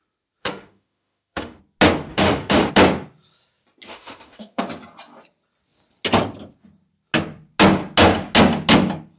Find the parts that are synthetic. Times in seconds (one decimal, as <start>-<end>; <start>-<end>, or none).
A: 0.4-1.6; 2.1-2.7; 3.9-4.6